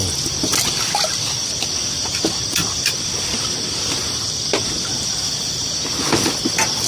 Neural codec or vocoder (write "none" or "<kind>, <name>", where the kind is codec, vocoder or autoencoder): none